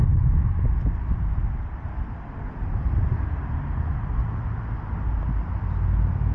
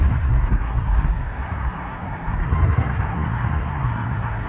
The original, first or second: first